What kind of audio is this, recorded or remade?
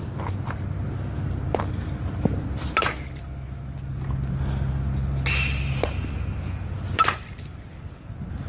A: recorded